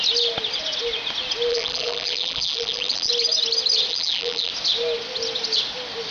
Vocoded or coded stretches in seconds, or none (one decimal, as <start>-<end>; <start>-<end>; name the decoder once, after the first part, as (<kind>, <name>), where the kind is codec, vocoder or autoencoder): 1.5-3.1 (vocoder, BigVGAN v2); 3.9-4.5